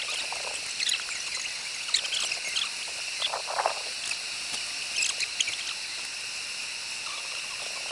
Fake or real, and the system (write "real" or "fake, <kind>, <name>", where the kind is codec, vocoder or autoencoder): real